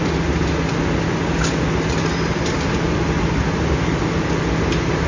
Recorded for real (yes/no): yes